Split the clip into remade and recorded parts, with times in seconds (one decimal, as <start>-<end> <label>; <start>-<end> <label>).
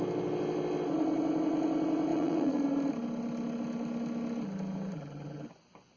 0.0-2.1 recorded; 2.1-2.6 remade; 2.6-6.0 recorded